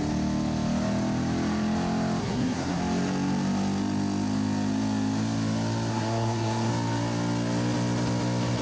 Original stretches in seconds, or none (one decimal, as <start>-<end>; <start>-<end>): 0.0-2.2; 2.8-5.9; 6.7-8.6